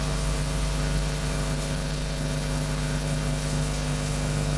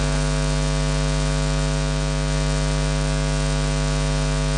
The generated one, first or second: first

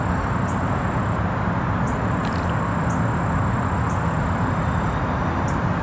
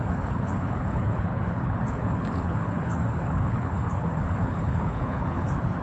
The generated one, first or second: second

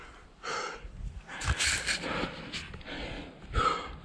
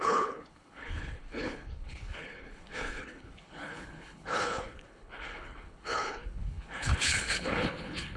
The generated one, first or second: second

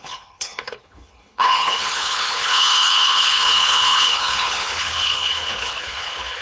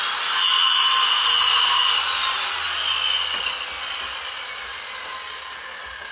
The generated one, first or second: first